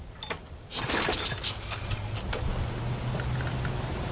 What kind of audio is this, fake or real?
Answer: real